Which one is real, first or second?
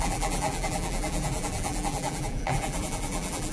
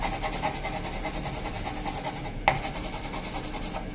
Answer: second